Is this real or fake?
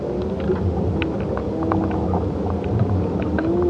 real